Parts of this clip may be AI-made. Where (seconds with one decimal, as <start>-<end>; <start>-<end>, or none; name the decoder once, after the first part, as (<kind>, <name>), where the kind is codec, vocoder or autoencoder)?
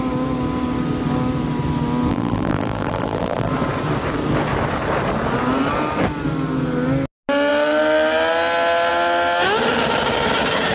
2.1-3.5 (vocoder, BigVGAN v2)